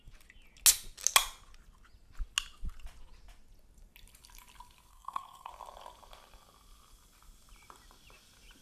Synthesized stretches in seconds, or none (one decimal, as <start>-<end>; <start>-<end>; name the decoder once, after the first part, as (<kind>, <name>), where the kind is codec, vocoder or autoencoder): 4.9-5.5 (codec, SNAC)